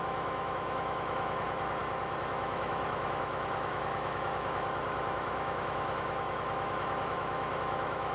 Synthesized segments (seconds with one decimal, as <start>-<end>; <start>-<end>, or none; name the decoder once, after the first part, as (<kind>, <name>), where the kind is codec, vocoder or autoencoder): 0.0-1.8 (autoencoder, DAC-VAE); 2.3-8.1